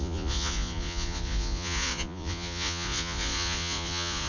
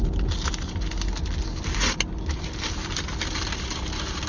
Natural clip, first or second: second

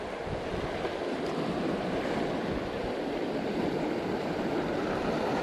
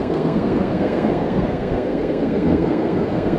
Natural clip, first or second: first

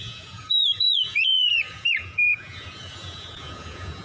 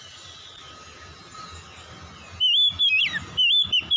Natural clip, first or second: second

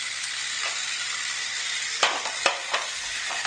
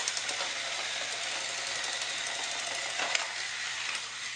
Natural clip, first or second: second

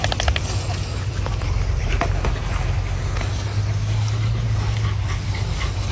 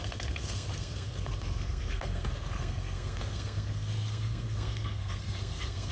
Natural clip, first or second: first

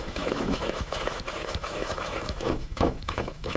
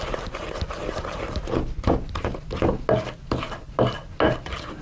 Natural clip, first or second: second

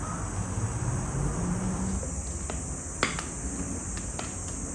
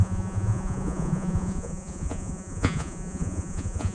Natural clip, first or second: first